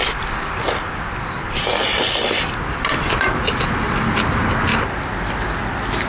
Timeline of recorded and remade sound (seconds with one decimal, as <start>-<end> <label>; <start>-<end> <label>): 0.0-1.9 recorded; 1.9-3.2 remade; 3.2-6.1 recorded